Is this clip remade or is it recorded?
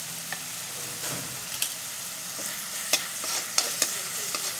remade